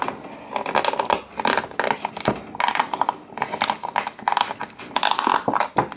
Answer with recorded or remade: recorded